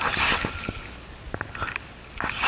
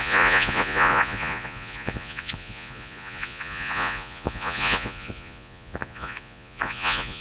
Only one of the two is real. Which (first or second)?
first